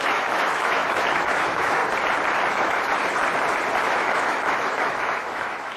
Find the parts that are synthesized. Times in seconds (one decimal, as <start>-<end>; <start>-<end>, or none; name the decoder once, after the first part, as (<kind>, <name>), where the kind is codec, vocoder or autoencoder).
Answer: 0.0-1.8 (autoencoder, DAC-VAE); 2.5-2.9; 3.8-5.8